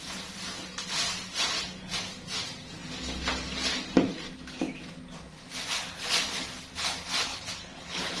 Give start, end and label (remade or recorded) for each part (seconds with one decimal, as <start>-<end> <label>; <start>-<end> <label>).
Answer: 0.0-7.3 recorded; 7.3-8.2 remade